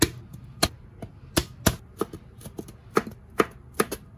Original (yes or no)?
yes